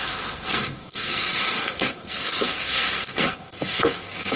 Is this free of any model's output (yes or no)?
no